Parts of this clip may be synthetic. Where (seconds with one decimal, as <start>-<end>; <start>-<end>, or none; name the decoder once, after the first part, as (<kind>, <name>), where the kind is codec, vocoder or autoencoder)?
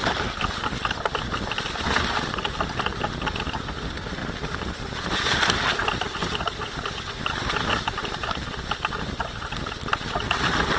none